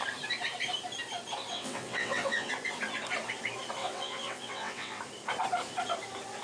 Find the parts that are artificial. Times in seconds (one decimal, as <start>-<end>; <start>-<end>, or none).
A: 1.5-2.5; 3.8-5.0